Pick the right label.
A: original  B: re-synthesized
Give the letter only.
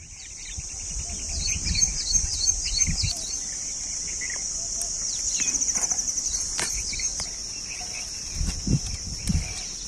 A